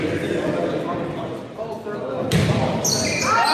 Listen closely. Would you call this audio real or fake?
real